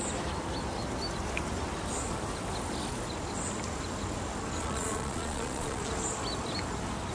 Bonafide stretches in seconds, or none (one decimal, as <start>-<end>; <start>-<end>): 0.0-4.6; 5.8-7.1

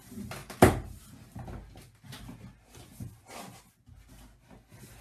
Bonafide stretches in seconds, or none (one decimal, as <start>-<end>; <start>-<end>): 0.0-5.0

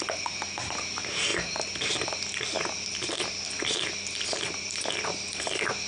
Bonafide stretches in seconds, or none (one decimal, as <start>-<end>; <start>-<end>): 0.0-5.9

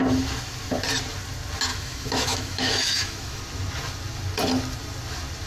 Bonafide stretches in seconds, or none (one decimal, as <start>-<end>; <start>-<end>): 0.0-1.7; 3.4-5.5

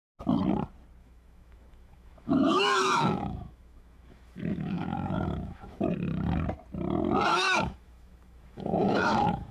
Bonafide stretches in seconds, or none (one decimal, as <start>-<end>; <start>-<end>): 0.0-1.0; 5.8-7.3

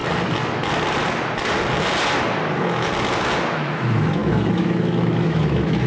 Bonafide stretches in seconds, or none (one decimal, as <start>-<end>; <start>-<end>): 0.0-3.5